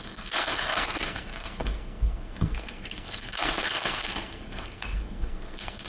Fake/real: fake